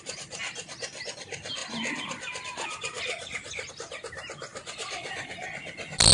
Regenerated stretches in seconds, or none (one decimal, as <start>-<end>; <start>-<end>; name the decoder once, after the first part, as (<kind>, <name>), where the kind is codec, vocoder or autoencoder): 1.6-3.7 (vocoder, BigVGAN v2); 4.5-6.1